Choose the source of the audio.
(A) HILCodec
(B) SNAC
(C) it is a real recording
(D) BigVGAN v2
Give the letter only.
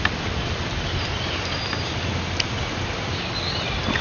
C